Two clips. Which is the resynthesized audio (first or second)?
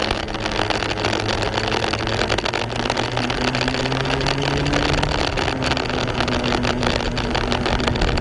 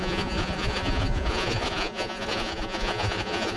second